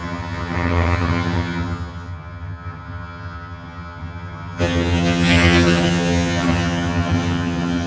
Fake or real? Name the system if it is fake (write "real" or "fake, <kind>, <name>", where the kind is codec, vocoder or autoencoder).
fake, vocoder, HiFi-GAN